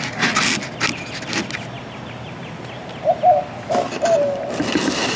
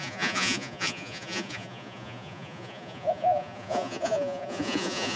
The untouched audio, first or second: first